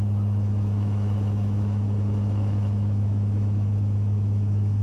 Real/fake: fake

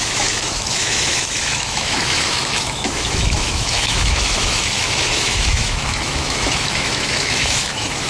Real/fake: fake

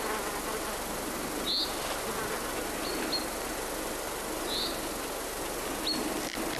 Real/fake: real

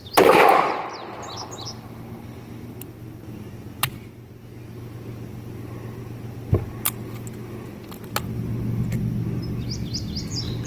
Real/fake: real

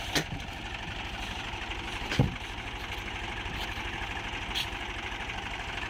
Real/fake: real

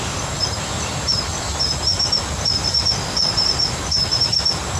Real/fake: real